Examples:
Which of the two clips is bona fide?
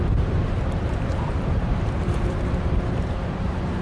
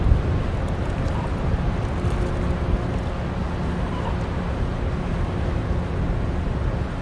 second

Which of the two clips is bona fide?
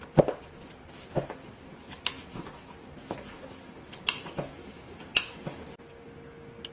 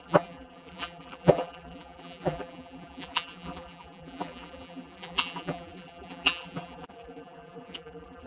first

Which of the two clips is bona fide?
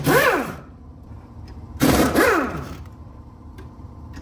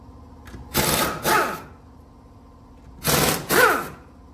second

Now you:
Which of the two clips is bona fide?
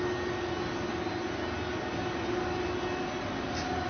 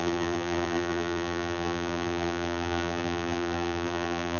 first